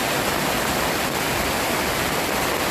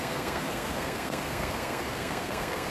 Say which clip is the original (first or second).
first